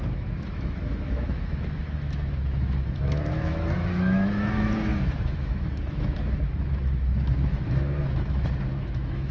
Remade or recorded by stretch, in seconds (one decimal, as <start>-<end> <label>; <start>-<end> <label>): 0.0-9.3 remade